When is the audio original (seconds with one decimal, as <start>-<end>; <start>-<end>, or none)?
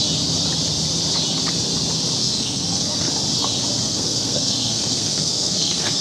0.0-2.2; 3.1-3.8